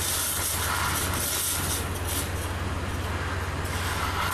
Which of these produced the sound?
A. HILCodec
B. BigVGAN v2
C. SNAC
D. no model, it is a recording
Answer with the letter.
D